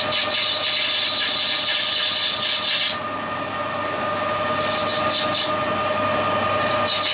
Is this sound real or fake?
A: real